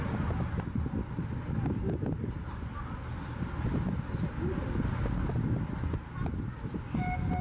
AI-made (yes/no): no